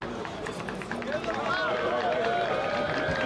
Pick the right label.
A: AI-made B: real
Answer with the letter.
B